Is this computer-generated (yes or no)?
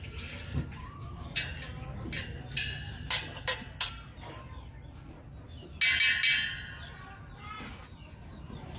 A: no